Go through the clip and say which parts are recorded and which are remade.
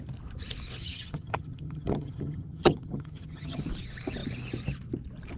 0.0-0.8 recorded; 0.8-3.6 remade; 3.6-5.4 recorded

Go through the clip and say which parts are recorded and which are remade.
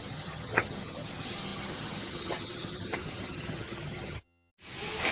0.0-4.5 remade; 4.5-5.1 recorded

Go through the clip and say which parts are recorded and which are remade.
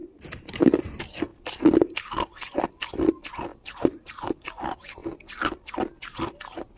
0.0-0.8 remade; 0.8-3.5 recorded; 3.5-4.2 remade; 4.2-6.8 recorded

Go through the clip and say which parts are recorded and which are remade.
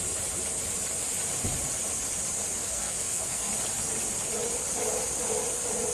0.0-2.6 recorded; 2.6-3.5 remade; 3.5-5.9 recorded